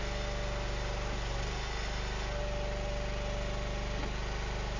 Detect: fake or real real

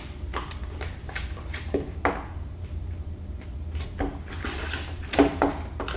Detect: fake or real real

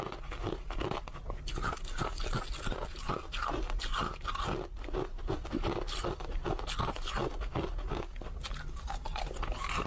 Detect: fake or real real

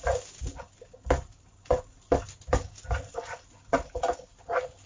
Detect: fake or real real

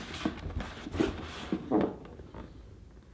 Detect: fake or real real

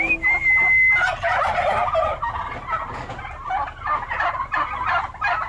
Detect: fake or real real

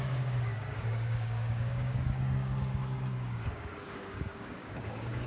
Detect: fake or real fake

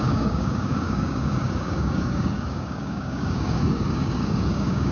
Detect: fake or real fake